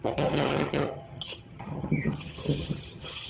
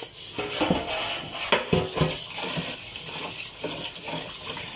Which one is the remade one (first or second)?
first